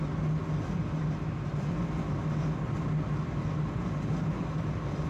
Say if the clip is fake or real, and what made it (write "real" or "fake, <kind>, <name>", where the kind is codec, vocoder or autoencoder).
real